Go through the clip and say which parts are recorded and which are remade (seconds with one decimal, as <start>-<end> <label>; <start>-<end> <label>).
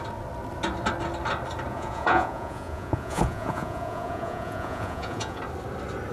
0.0-1.7 recorded; 1.7-5.4 remade; 5.4-6.1 recorded